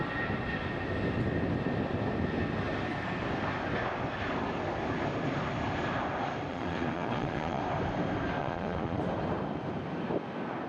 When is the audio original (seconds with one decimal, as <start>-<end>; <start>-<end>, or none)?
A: 0.0-6.5; 7.6-8.4; 9.0-10.7

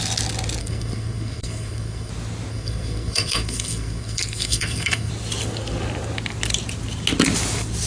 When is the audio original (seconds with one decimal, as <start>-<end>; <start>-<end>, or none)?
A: 0.0-0.6; 2.1-2.5; 5.1-7.9